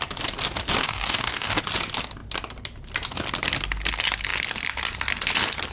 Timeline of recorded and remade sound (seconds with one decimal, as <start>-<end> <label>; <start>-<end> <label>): 0.0-0.8 recorded; 0.8-1.6 remade; 1.6-5.7 recorded